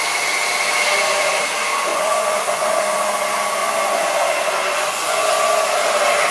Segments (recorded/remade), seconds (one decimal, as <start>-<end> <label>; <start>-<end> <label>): 0.0-1.9 recorded; 1.9-2.8 remade; 2.8-3.6 recorded; 3.6-5.6 remade; 5.6-6.3 recorded